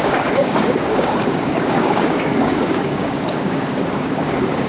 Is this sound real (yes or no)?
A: no